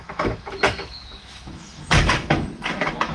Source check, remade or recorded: remade